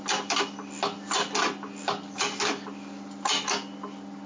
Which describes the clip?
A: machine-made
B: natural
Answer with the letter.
B